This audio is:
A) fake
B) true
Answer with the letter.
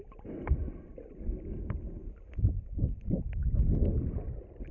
B